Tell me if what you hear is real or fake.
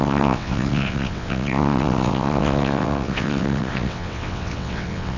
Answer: fake